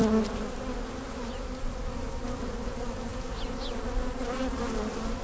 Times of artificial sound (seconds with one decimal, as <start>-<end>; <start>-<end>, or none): none